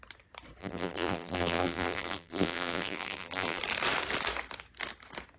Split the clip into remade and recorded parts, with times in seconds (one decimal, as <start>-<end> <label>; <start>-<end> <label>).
0.0-0.6 recorded; 0.6-3.6 remade; 3.6-5.4 recorded